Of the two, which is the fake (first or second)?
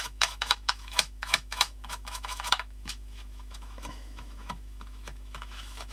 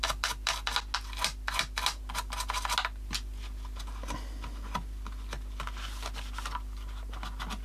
first